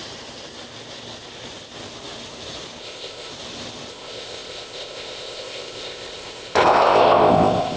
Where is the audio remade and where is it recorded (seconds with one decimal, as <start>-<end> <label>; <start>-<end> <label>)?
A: 0.0-2.8 recorded; 2.8-3.3 remade; 3.3-3.9 recorded; 3.9-7.8 remade